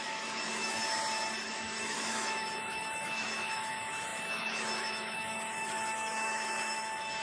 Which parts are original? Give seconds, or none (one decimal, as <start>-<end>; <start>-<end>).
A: 0.8-1.5